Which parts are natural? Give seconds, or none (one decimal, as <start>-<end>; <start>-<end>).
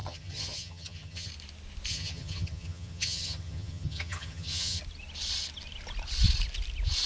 1.3-1.9; 4.8-7.1